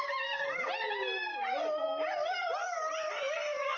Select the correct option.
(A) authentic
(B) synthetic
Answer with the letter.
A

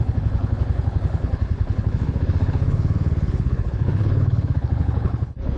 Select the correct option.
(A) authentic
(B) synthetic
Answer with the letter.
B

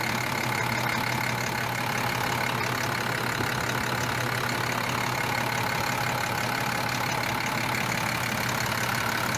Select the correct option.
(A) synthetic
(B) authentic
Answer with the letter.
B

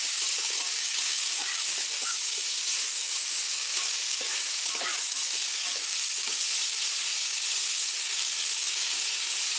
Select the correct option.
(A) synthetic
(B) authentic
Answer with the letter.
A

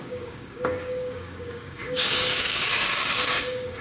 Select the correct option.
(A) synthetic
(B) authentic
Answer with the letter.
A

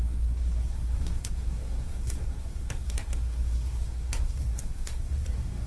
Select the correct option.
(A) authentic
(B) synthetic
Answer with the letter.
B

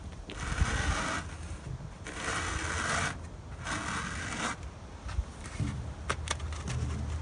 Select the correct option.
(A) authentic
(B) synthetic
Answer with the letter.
A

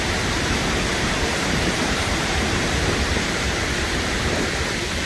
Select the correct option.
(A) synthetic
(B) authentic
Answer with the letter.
A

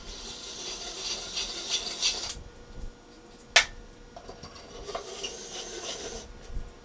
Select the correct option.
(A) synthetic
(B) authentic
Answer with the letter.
B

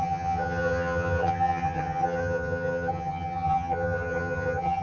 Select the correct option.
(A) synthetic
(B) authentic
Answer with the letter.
A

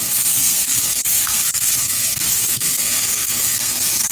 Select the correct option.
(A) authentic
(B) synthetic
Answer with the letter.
B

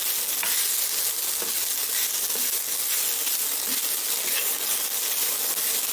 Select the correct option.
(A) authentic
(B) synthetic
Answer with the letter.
A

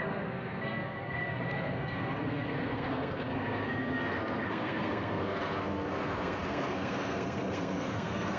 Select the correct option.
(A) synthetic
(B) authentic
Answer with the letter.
A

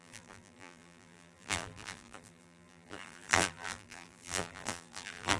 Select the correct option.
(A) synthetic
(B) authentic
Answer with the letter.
A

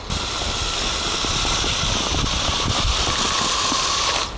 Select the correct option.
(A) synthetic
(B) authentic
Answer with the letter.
B